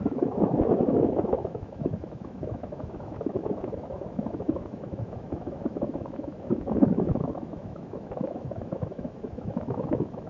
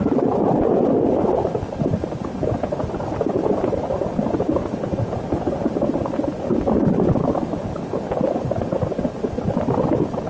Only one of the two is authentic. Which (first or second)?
second